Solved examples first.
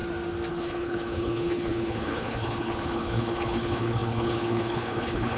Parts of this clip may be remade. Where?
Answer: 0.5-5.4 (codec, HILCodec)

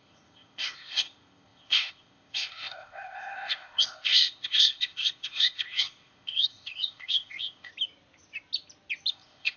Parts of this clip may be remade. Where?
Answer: 0.0-7.7 (codec, ZipCodec); 9.1-9.6

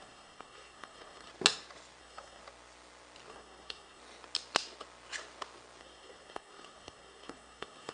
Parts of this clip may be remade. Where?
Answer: 0.0-1.3 (codec, SNAC); 2.0-2.4; 3.3-4.0; 5.8-7.9